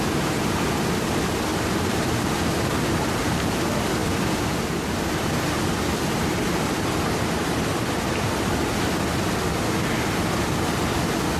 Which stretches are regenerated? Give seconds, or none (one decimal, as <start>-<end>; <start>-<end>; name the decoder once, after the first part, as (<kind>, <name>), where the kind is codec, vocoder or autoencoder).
1.5-3.6 (vocoder, BigVGAN v2)